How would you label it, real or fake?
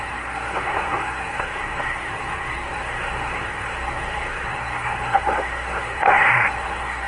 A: fake